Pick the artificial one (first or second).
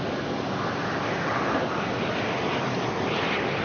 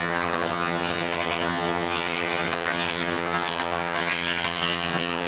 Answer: second